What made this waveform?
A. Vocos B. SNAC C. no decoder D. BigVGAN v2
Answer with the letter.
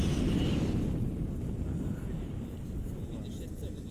C